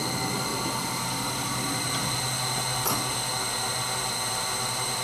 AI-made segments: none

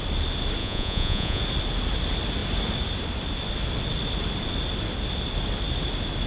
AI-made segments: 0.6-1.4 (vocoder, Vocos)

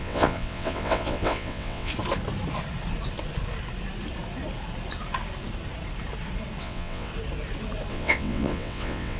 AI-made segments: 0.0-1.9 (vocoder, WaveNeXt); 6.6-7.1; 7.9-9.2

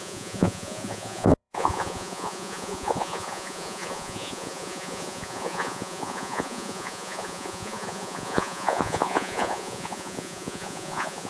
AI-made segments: 0.0-11.3 (vocoder, Vocos)